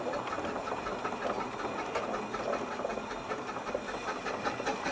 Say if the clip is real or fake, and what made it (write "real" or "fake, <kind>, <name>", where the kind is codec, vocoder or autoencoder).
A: real